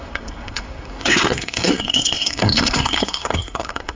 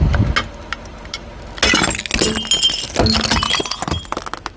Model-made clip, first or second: first